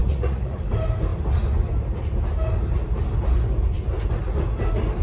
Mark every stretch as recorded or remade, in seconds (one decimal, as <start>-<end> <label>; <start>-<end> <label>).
0.0-0.6 remade; 0.6-5.0 recorded